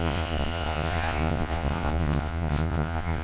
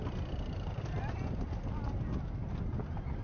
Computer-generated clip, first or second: first